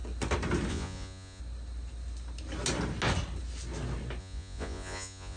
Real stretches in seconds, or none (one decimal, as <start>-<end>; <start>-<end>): 0.0-0.7; 1.4-4.2